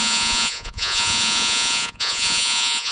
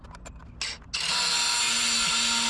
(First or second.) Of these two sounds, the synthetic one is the first